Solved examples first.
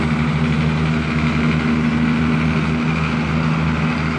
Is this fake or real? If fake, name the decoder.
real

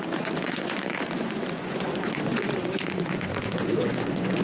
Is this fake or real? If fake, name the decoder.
fake, vocoder, Vocos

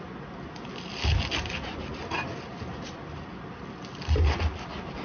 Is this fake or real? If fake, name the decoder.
real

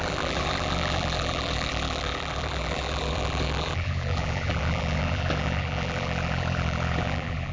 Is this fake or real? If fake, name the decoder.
fake, vocoder, BigVGAN v2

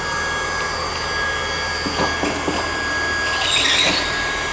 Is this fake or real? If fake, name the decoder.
real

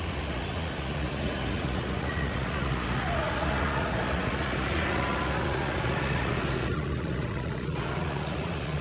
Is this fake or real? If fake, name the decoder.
fake, vocoder, Vocos